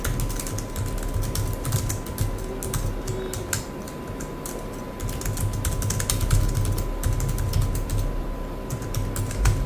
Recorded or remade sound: recorded